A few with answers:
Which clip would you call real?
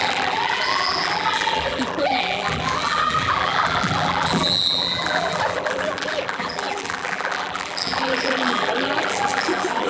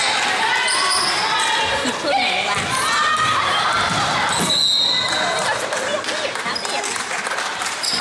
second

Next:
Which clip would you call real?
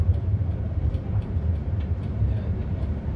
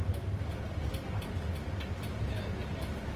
second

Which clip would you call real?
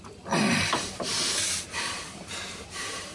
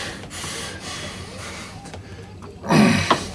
second